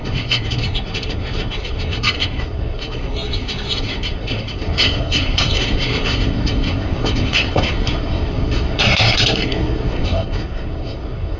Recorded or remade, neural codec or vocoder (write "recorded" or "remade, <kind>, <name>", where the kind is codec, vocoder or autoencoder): remade, codec, SNAC